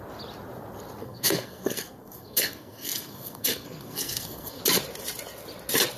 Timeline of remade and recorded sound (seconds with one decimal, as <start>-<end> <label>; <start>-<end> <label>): 0.0-1.0 recorded; 1.0-4.6 remade; 4.6-6.0 recorded